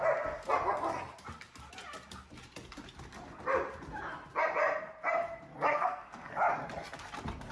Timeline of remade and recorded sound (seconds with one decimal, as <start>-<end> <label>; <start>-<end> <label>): 0.0-5.7 recorded; 5.7-6.3 remade; 6.3-7.5 recorded